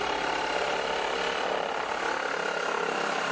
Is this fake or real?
real